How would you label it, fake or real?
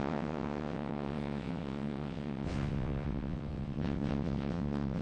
fake